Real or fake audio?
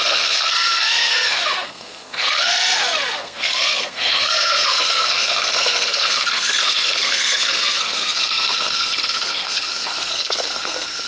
fake